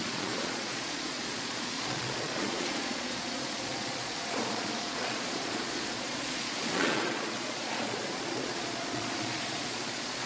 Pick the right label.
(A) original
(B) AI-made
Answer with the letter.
B